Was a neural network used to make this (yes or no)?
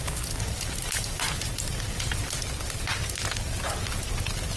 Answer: no